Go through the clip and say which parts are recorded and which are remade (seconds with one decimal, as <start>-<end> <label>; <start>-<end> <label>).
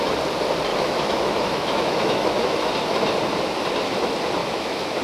0.0-0.7 recorded; 0.7-2.7 remade; 2.7-4.4 recorded; 4.4-5.0 remade